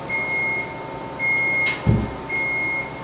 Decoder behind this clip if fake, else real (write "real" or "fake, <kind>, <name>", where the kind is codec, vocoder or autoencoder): real